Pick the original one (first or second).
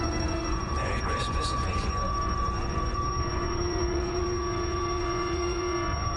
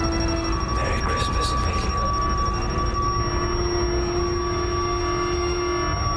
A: second